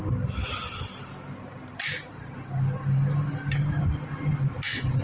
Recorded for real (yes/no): yes